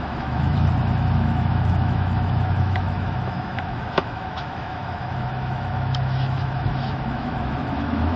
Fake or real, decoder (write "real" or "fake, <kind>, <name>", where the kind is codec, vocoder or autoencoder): fake, autoencoder, DAC-VAE